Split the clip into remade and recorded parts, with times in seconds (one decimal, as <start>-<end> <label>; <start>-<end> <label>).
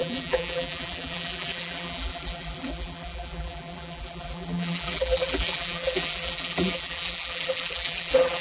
0.0-8.4 remade